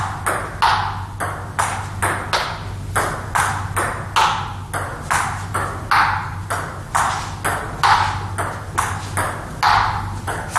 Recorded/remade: recorded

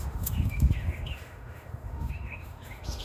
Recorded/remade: remade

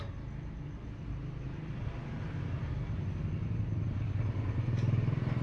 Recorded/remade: recorded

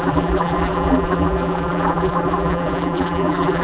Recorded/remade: remade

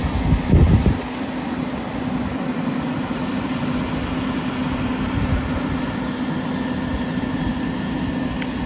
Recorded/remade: recorded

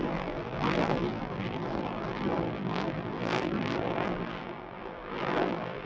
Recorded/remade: remade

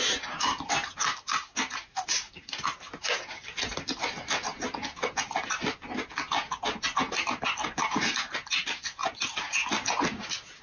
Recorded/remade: recorded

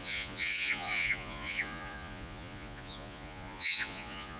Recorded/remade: remade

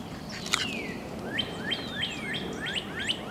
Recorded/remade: recorded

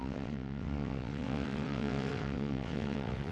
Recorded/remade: remade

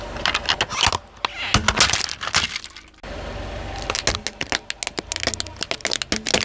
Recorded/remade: recorded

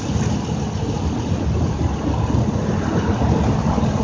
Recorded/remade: recorded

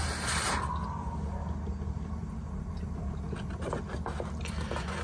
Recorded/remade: recorded